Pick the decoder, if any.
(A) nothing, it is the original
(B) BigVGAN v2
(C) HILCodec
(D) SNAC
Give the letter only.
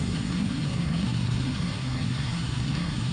D